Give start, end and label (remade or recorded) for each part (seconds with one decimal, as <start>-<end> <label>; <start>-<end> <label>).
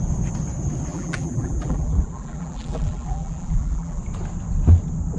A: 0.0-0.9 recorded; 0.9-4.0 remade; 4.0-5.2 recorded